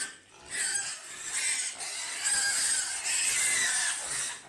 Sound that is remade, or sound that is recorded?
recorded